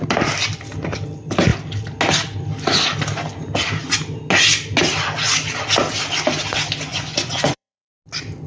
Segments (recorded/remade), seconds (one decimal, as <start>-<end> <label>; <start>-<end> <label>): 0.0-6.9 recorded; 6.9-7.9 remade; 7.9-8.5 recorded